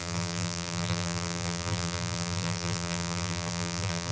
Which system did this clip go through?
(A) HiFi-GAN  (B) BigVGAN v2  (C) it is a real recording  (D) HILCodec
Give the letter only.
B